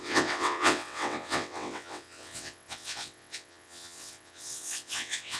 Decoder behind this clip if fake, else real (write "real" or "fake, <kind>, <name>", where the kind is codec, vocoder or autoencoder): fake, vocoder, WaveNeXt